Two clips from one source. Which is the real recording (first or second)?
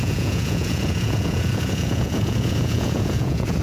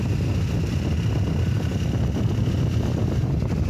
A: second